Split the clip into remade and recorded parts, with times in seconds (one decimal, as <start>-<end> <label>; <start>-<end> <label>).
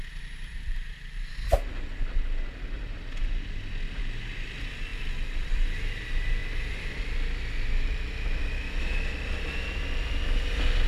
0.0-0.5 recorded; 0.5-1.3 remade; 1.3-4.9 recorded; 4.9-5.8 remade; 5.8-10.9 recorded